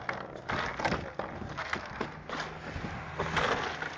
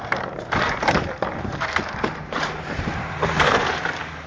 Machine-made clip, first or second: second